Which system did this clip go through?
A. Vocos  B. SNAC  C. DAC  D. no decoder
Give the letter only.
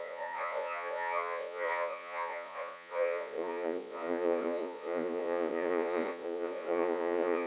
A